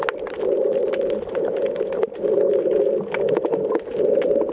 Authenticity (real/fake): real